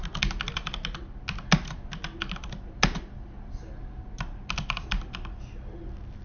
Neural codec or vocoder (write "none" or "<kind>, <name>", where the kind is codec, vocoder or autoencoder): none